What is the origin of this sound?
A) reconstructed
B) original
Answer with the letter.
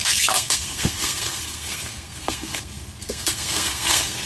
A